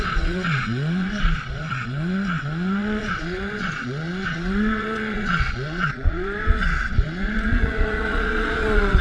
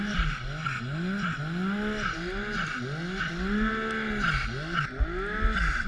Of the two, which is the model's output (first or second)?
first